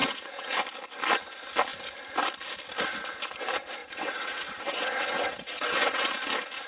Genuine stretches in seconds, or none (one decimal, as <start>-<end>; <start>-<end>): 0.5-3.8; 6.1-6.7